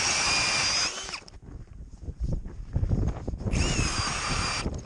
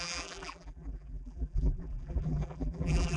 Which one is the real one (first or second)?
first